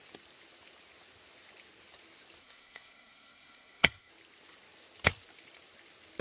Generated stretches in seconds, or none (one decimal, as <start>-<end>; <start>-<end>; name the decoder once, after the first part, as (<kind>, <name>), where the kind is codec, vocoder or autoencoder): 2.4-4.1 (codec, SNAC)